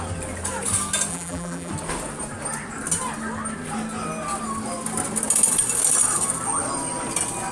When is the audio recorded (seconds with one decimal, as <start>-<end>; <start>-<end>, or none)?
0.0-1.1; 1.7-7.5